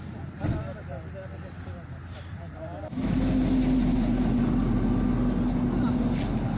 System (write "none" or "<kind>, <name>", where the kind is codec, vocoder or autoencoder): none